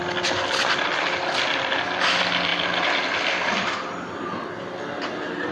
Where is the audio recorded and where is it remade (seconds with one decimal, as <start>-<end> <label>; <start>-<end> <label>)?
0.0-5.5 recorded